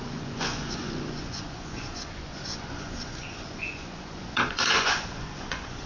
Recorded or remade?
remade